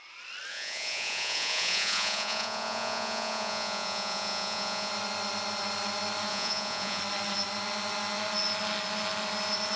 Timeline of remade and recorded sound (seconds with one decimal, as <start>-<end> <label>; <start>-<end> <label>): 0.0-0.5 recorded; 0.5-4.9 remade; 4.9-6.3 recorded; 6.3-7.0 remade; 7.0-9.8 recorded